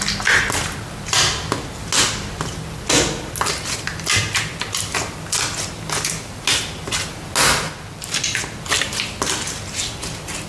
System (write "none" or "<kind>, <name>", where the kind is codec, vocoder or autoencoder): none